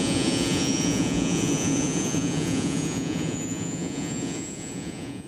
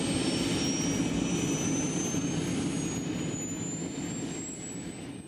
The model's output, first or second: first